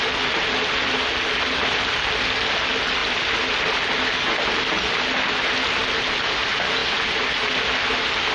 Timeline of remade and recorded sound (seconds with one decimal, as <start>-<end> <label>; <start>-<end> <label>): 0.0-8.3 recorded